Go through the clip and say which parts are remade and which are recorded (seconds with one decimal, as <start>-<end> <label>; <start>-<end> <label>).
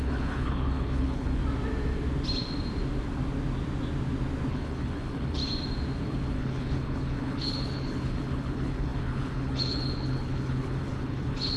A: 0.0-1.4 remade; 1.4-4.5 recorded; 4.5-5.4 remade; 5.4-6.0 recorded; 6.0-11.6 remade